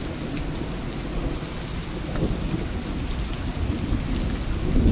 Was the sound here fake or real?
real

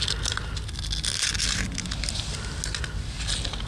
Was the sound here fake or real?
real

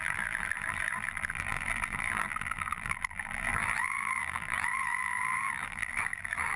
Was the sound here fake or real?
fake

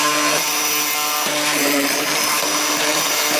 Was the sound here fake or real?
real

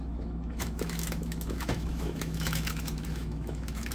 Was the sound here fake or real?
fake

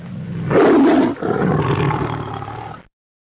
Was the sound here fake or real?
real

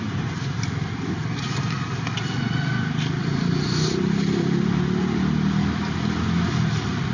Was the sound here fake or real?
real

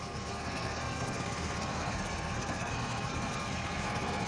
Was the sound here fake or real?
fake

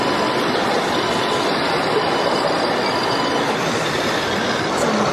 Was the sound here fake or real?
fake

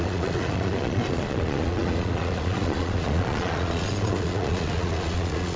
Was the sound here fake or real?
fake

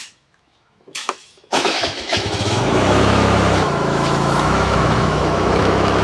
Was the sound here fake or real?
fake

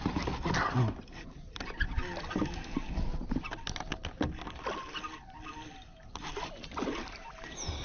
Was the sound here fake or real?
real